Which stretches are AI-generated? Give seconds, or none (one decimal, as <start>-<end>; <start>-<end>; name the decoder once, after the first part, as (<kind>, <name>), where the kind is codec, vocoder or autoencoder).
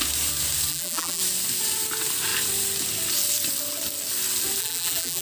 0.7-1.2 (vocoder, BigVGAN v2); 4.6-5.2